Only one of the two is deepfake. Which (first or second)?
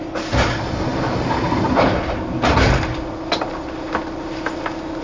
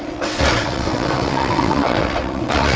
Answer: second